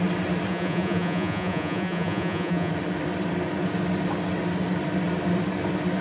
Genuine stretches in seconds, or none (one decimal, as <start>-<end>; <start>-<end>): 0.0-0.5; 2.7-6.0